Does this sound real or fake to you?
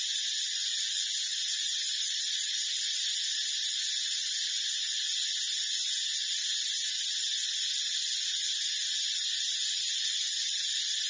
real